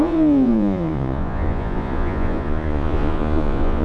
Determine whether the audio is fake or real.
fake